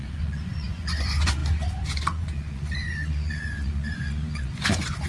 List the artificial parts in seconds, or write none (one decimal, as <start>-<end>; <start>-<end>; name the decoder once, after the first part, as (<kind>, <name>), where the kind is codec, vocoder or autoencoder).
0.0-5.1 (vocoder, Vocos)

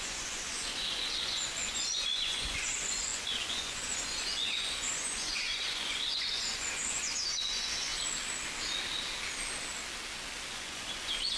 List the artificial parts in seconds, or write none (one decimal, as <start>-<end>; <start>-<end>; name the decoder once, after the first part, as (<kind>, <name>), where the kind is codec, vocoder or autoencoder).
0.0-7.9 (vocoder, Vocos); 10.5-11.4